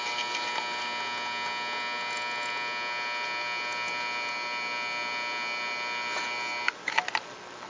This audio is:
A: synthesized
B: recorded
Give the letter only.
B